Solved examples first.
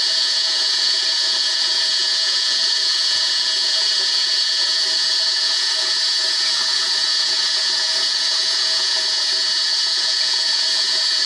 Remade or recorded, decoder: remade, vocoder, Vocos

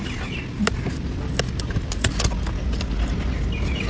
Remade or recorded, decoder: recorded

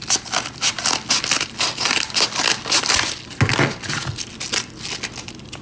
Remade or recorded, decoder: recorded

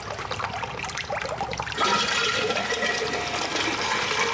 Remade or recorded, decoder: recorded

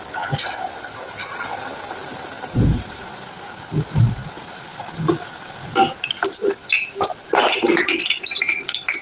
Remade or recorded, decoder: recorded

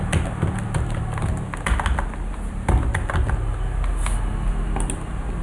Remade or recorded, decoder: recorded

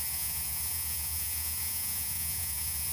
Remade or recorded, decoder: remade, vocoder, Vocos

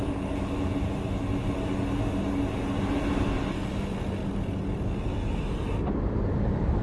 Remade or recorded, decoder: recorded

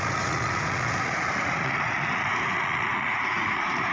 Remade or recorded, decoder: remade, vocoder, Vocos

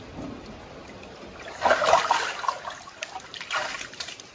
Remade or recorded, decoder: recorded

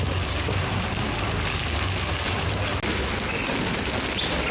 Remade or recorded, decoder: recorded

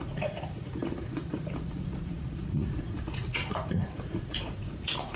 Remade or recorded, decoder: remade, vocoder, Vocos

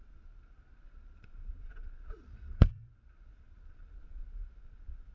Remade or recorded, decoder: remade, vocoder, Vocos